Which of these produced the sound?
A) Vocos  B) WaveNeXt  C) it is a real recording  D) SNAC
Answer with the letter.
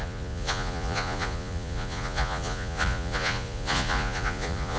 A